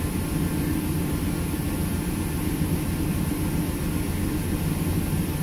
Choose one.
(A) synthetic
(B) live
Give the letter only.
B